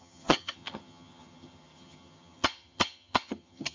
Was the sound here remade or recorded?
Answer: remade